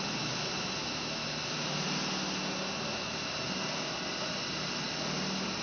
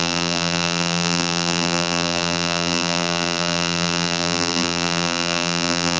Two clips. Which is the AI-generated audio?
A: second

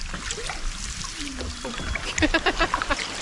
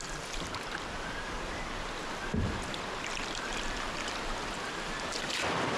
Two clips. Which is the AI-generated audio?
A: first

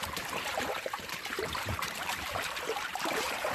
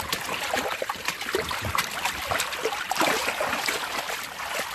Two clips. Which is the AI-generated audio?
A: first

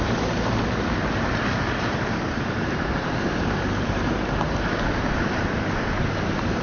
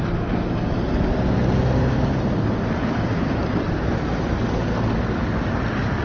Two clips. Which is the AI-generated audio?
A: first